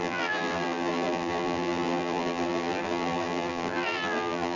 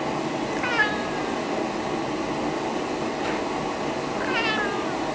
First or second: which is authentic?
second